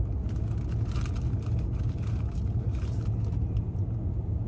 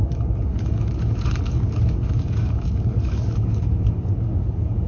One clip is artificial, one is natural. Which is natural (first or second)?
first